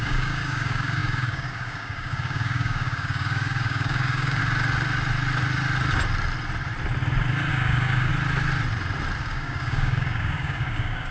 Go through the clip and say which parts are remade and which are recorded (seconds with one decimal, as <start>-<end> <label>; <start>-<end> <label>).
0.0-4.4 remade; 4.4-7.5 recorded; 7.5-8.1 remade; 8.1-9.2 recorded; 9.2-11.1 remade

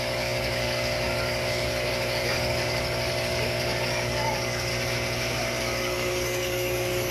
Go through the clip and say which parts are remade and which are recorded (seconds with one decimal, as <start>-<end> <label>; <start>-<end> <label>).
0.0-4.7 remade; 4.7-5.6 recorded; 5.6-7.1 remade